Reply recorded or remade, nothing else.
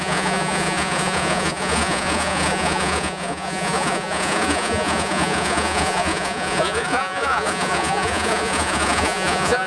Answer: remade